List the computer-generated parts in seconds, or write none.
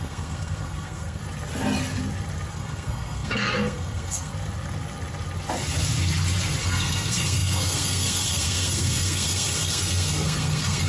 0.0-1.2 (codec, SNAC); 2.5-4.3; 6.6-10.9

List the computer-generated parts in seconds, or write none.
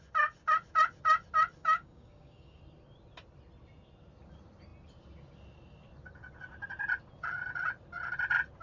1.6-2.6 (codec, DAC)